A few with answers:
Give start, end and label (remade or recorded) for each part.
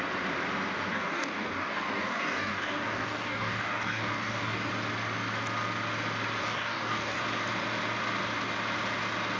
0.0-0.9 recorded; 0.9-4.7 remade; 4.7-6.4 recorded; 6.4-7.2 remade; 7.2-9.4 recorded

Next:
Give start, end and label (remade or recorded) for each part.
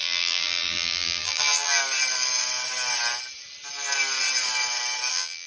0.0-1.8 remade; 1.8-5.1 recorded; 5.1-5.5 remade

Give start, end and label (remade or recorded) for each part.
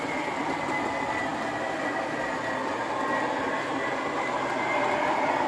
0.0-5.5 recorded